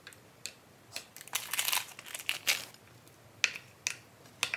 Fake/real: real